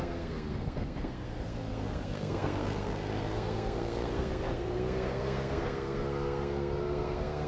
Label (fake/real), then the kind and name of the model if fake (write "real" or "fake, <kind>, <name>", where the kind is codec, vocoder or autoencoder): fake, codec, SNAC